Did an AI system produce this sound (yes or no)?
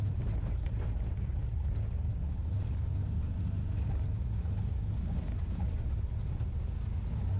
no